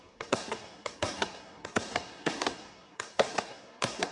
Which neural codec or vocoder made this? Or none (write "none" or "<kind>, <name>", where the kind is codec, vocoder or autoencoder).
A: codec, SNAC